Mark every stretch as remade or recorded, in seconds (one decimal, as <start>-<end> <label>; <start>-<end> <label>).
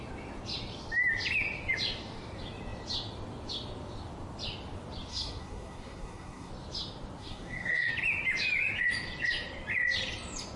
0.0-5.1 recorded; 5.1-6.5 remade; 6.5-7.2 recorded; 7.2-7.9 remade; 7.9-10.6 recorded